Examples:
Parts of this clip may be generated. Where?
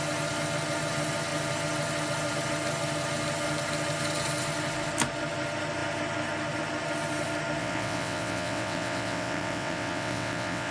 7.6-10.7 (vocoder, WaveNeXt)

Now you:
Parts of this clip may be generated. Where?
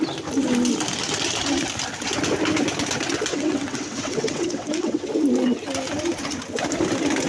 3.3-5.1 (vocoder, WaveNeXt)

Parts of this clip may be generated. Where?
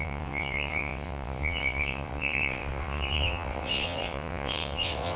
0.0-5.2 (vocoder, WaveNeXt)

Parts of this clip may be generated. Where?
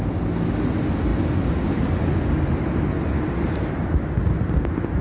none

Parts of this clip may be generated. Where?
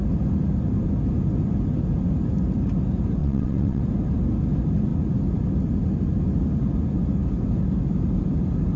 3.2-3.8 (vocoder, WaveNeXt)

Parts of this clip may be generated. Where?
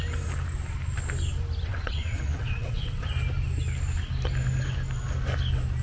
1.7-3.0 (vocoder, WaveNeXt)